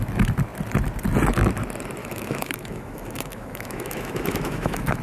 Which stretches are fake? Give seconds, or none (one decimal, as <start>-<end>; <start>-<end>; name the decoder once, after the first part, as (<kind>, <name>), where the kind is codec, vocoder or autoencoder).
2.0-5.0 (autoencoder, DAC-VAE)